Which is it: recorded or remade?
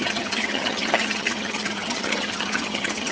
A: remade